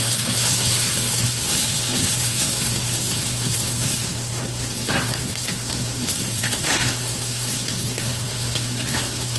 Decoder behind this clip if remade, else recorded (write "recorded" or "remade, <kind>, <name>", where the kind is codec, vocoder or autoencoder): remade, codec, SNAC